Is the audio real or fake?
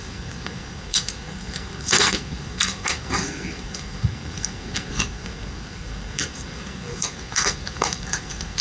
fake